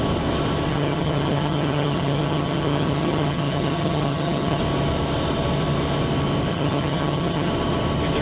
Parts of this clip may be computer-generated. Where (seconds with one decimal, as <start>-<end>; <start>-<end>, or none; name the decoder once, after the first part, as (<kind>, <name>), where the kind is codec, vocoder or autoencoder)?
0.7-4.6 (vocoder, HiFi-GAN); 6.5-7.5